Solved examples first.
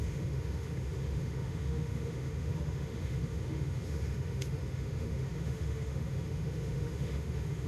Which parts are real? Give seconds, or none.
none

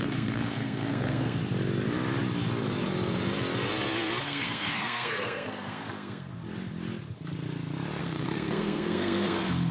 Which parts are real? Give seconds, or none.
1.4-4.2; 6.3-8.0

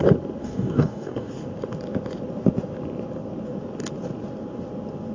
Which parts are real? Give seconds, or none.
0.0-0.4; 1.3-5.1

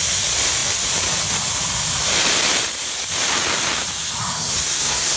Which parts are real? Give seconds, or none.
0.0-4.3

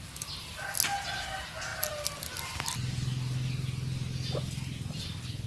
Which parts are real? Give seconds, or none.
0.0-5.5

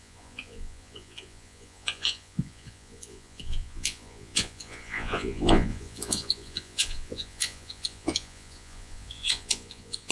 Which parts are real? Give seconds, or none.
none

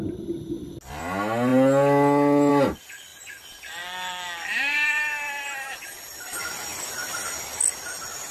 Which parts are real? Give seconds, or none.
0.0-3.1; 7.4-8.3